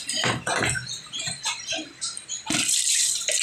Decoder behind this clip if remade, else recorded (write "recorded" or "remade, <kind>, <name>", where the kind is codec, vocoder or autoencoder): recorded